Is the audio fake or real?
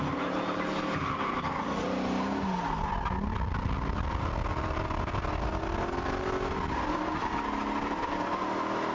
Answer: real